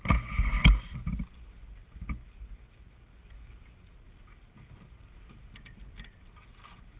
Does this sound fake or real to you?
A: real